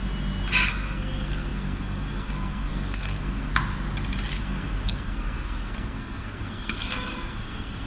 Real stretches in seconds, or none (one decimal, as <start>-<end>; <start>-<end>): 0.0-0.7; 3.5-4.4